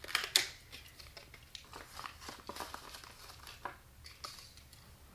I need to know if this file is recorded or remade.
recorded